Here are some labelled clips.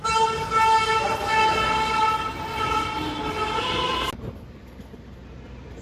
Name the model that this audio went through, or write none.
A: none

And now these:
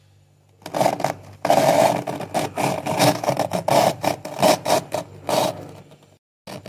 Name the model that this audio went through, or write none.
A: none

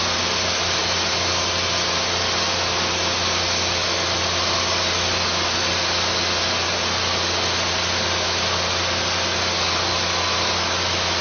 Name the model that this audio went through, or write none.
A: none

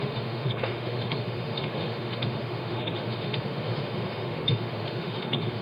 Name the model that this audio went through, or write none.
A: autoencoder, DAC-VAE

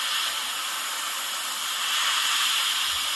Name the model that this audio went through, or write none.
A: none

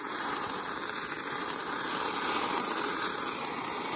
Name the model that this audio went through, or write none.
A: vocoder, BigVGAN v2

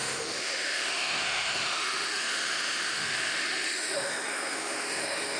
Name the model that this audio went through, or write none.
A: autoencoder, DAC-VAE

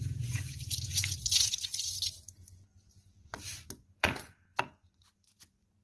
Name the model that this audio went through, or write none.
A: vocoder, Vocos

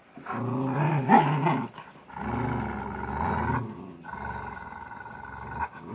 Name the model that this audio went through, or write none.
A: none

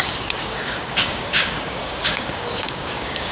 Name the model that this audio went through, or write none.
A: codec, DAC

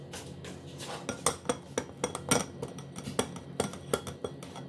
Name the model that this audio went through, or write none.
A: none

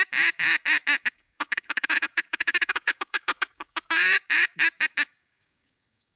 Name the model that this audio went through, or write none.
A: codec, DAC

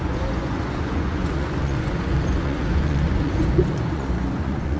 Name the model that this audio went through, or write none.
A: vocoder, Vocos